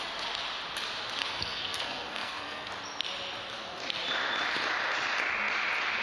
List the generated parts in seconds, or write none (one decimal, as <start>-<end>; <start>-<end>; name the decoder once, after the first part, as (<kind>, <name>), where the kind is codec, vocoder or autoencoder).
1.2-2.7 (codec, SNAC)